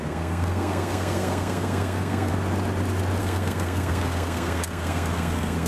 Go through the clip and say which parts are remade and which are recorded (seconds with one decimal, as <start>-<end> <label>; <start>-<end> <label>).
0.0-2.3 remade; 2.3-3.2 recorded; 3.2-5.7 remade